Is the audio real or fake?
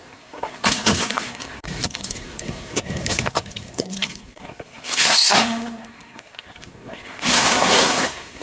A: fake